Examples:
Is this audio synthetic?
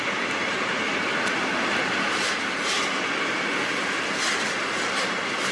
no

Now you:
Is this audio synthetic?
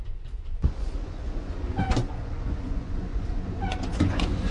yes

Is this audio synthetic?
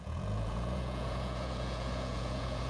yes